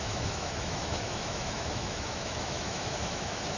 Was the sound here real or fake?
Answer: fake